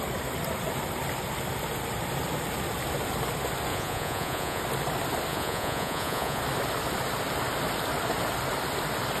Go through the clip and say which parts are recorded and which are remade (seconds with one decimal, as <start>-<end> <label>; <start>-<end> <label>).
0.0-3.7 recorded; 3.7-4.6 remade; 4.6-5.3 recorded; 5.3-6.4 remade; 6.4-9.2 recorded